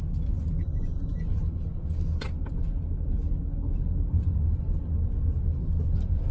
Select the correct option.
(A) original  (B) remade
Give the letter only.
A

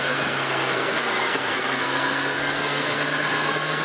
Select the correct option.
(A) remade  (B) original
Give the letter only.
A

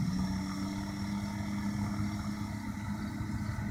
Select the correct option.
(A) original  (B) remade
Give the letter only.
A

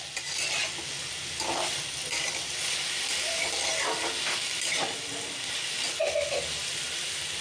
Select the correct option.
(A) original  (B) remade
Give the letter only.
A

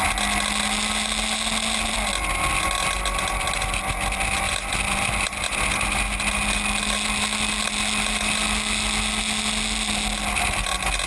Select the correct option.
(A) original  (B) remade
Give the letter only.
A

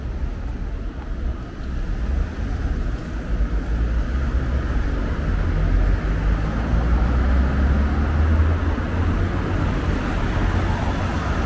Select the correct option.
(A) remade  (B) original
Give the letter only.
B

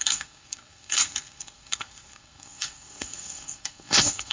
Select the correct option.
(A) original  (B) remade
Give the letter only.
B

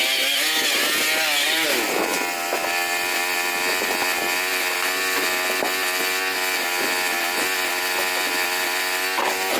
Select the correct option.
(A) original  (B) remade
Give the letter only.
A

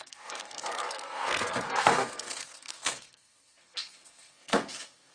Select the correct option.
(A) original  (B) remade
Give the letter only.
B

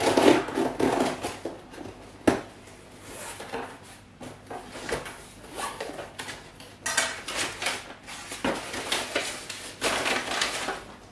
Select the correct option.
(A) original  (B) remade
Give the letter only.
A